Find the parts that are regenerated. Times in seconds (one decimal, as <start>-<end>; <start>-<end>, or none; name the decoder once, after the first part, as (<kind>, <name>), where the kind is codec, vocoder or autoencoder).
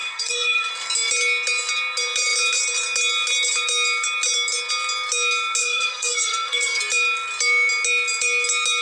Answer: 0.0-0.7 (codec, SNAC); 5.6-6.8